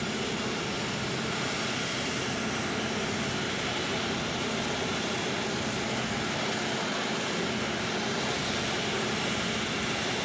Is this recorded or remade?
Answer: recorded